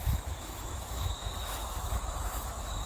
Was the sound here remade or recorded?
remade